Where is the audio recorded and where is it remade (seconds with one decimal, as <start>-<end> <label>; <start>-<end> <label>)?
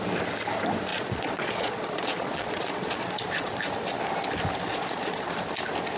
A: 0.0-0.9 recorded; 0.9-3.5 remade; 3.5-4.7 recorded; 4.7-5.3 remade; 5.3-6.0 recorded